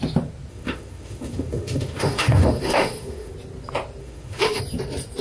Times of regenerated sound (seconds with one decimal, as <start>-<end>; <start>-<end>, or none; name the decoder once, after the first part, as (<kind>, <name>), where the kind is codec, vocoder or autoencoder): 0.5-3.3 (autoencoder, DAC-VAE); 4.0-4.6

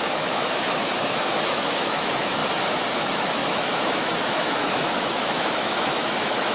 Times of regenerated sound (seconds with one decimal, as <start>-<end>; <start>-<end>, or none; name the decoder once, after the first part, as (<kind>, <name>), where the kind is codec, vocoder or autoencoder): 0.0-2.4 (autoencoder, DAC-VAE); 2.9-6.5

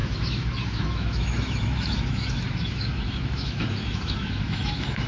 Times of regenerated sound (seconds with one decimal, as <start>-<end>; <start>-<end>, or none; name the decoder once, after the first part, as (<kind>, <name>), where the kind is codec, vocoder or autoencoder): 0.0-5.1 (autoencoder, DAC-VAE)

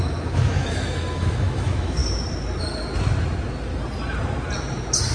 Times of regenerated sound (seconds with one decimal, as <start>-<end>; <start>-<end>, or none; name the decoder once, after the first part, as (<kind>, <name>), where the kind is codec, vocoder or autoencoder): 0.0-2.0 (autoencoder, DAC-VAE)

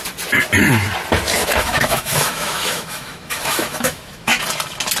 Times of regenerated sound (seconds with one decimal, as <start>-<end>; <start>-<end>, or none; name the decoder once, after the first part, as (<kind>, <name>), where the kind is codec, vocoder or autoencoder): 1.4-4.4 (autoencoder, DAC-VAE)